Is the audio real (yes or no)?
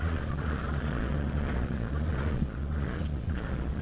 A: no